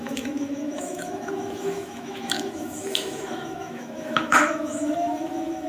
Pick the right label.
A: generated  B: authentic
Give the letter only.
A